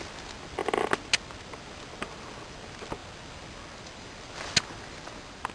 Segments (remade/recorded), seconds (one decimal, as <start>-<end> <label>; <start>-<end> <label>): 0.0-5.5 recorded